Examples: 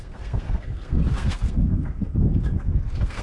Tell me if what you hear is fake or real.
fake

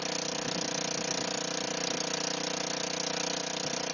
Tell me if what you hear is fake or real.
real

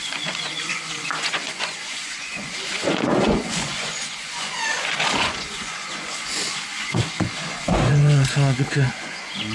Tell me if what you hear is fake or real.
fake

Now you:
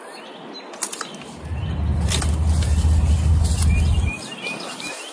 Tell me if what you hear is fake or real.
real